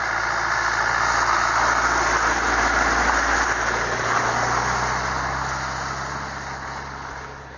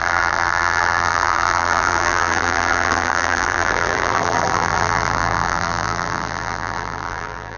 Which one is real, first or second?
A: first